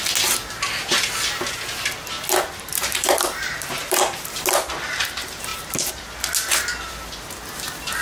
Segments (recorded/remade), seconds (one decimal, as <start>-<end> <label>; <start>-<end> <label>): 0.0-2.7 recorded; 2.7-4.4 remade; 4.4-5.5 recorded; 5.5-6.0 remade; 6.0-8.0 recorded